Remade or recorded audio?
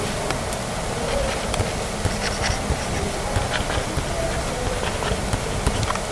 recorded